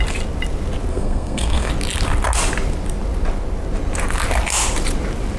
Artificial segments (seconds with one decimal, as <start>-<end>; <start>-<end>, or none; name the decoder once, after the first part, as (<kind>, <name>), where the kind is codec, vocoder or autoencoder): 0.9-1.7 (codec, SNAC)